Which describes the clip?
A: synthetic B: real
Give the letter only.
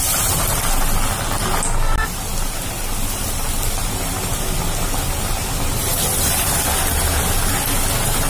B